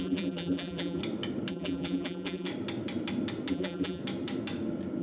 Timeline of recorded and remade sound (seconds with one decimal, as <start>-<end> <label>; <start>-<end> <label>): 0.0-1.0 remade; 1.0-1.5 recorded; 1.5-2.5 remade; 2.5-3.5 recorded; 3.5-4.0 remade; 4.0-5.0 recorded